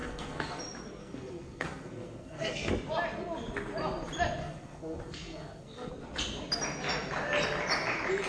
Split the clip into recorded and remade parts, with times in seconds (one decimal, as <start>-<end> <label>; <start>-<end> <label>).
0.0-0.6 remade; 0.6-1.0 recorded; 1.0-2.7 remade; 2.7-4.4 recorded; 4.4-5.9 remade; 5.9-8.3 recorded